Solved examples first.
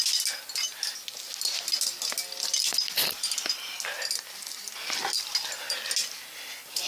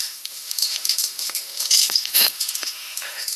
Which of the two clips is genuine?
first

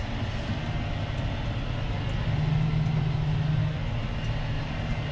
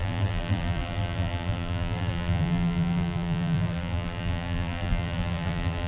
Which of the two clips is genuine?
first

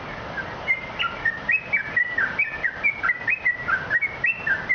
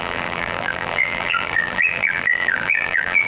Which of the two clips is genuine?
first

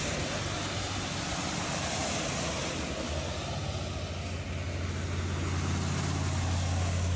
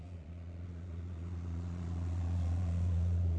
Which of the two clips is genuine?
first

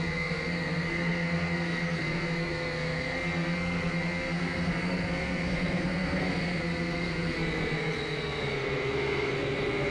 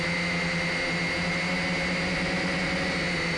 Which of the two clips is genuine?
second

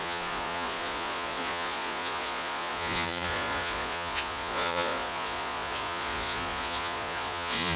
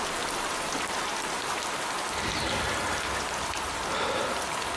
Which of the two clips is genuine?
second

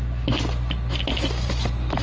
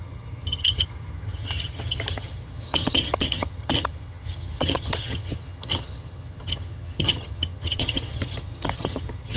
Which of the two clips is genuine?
first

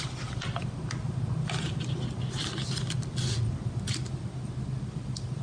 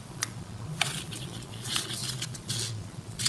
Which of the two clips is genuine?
first